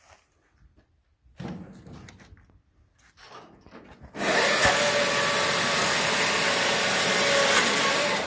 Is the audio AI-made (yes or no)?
no